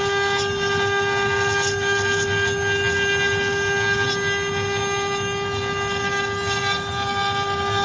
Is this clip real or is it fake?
real